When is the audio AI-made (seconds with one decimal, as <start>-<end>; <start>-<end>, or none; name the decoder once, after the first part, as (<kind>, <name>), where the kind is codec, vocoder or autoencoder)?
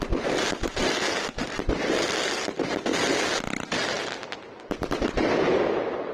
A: none